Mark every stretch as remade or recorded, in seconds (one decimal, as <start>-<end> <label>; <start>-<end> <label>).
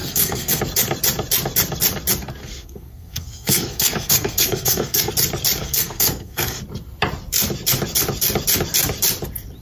0.0-0.6 remade; 0.6-2.4 recorded; 2.4-5.1 remade; 5.1-5.6 recorded; 5.6-6.6 remade; 6.6-9.6 recorded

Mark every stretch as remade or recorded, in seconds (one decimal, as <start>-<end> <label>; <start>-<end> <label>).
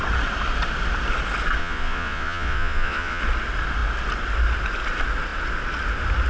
0.0-1.6 recorded; 1.6-3.2 remade; 3.2-6.3 recorded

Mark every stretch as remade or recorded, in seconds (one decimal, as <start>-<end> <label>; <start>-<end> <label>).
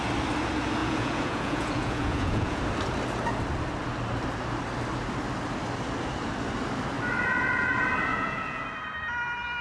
0.0-0.8 recorded; 0.8-2.6 remade; 2.6-8.1 recorded; 8.1-8.6 remade; 8.6-9.6 recorded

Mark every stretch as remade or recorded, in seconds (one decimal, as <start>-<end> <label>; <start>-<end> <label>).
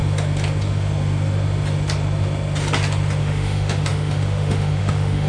0.0-3.2 recorded; 3.2-5.3 remade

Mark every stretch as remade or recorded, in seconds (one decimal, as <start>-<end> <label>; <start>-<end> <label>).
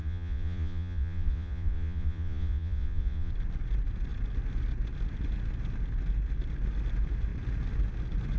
0.0-3.3 remade; 3.3-8.4 recorded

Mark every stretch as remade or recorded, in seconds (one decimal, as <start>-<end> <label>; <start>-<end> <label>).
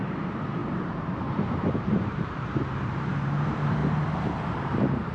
0.0-3.8 remade; 3.8-4.4 recorded; 4.4-5.1 remade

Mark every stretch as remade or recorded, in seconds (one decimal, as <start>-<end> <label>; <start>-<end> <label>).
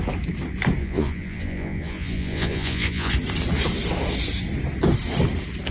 0.0-0.8 recorded; 0.8-3.1 remade; 3.1-5.7 recorded